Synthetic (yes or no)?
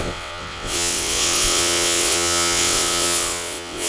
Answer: yes